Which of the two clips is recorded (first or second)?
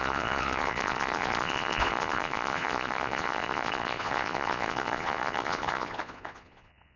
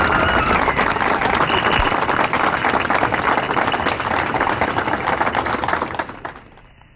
second